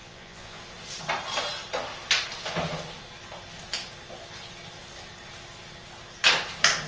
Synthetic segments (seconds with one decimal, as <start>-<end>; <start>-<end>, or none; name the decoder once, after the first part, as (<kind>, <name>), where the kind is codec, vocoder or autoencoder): 0.0-0.6 (vocoder, Vocos)